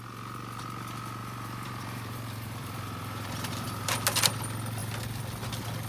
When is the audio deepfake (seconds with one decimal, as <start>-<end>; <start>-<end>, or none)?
1.2-3.9